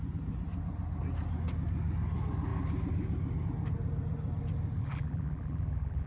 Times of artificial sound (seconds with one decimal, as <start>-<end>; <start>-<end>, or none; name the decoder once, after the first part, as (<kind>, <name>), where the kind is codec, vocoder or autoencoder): 4.8-6.1 (vocoder, BigVGAN v2)